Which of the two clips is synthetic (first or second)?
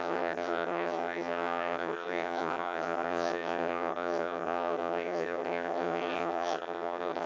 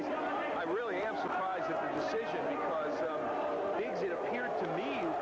first